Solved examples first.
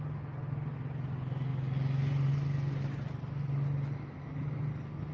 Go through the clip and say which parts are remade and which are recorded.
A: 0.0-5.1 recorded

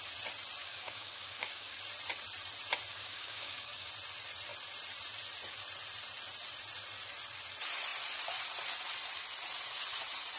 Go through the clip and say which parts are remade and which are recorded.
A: 0.0-0.6 recorded; 0.6-1.8 remade; 1.8-2.9 recorded; 2.9-3.9 remade; 3.9-10.4 recorded

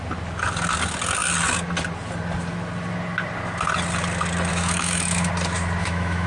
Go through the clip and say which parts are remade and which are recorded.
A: 0.0-4.5 recorded; 4.5-5.3 remade; 5.3-5.8 recorded; 5.8-6.3 remade

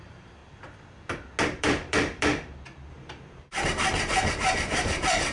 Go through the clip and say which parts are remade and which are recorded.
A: 0.0-0.4 remade; 0.4-1.6 recorded; 1.6-2.3 remade; 2.3-2.9 recorded; 2.9-5.3 remade

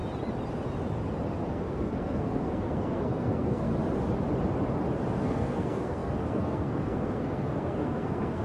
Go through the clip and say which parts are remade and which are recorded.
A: 0.0-1.5 recorded; 1.5-3.7 remade; 3.7-5.2 recorded; 5.2-8.4 remade

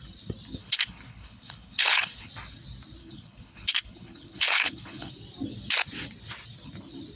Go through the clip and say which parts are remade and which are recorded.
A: 0.0-0.6 recorded; 0.6-2.3 remade; 2.3-3.0 recorded; 3.0-5.1 remade; 5.1-7.2 recorded

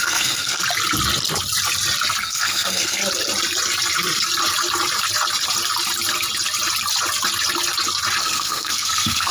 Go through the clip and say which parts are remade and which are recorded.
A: 0.0-0.6 remade; 0.6-2.2 recorded; 2.2-3.0 remade; 3.0-8.2 recorded; 8.2-9.3 remade